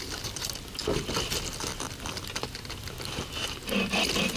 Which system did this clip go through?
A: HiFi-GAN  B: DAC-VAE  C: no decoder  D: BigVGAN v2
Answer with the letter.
C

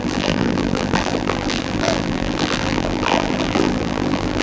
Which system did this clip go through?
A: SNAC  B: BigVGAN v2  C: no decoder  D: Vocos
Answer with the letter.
B